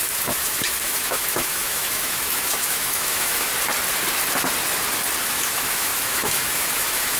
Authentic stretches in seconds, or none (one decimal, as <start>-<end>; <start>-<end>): 3.5-5.2